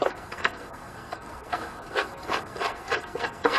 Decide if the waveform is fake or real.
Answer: fake